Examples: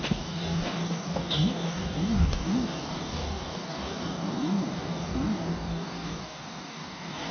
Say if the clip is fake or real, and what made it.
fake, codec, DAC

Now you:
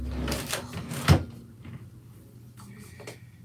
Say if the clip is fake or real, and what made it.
real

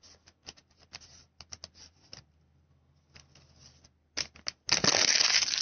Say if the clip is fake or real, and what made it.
real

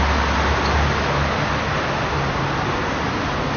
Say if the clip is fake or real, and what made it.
real